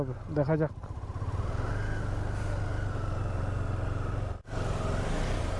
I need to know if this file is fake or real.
real